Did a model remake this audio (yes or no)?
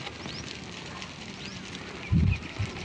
no